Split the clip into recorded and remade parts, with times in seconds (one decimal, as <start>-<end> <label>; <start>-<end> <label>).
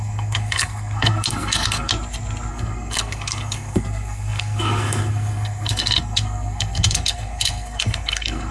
0.0-1.9 remade; 1.9-2.5 recorded; 2.5-8.5 remade